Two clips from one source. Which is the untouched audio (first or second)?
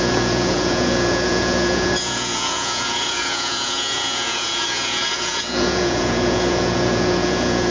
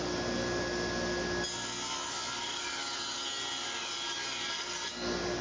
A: second